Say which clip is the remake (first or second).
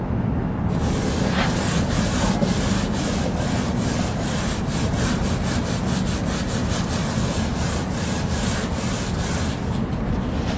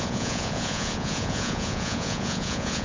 second